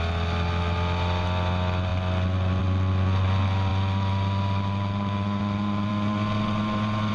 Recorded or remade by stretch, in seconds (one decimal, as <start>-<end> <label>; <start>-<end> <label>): 0.0-7.1 recorded